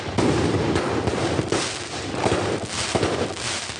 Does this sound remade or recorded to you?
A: recorded